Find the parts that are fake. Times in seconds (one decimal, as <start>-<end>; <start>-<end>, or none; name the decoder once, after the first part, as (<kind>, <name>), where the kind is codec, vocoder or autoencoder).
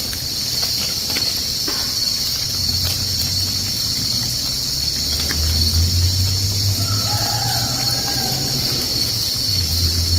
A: none